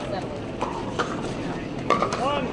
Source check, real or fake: real